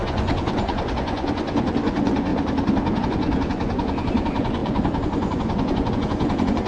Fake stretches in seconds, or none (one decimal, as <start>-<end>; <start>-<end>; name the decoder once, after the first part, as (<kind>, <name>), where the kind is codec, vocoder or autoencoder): 0.0-2.3 (vocoder, Vocos); 3.0-6.7